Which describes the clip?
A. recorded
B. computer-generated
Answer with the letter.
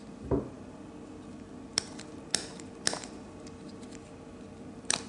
A